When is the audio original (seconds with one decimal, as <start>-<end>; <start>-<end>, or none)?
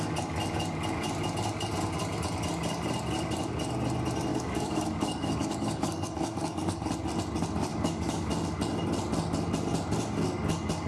0.0-4.3; 6.9-7.7; 8.3-10.9